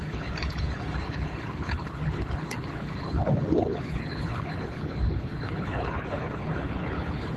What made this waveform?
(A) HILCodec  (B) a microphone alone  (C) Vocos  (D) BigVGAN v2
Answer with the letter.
A